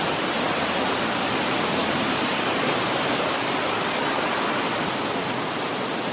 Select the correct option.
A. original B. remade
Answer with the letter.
A